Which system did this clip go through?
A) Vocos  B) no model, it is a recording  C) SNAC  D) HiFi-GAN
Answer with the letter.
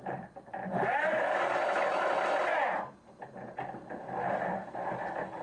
B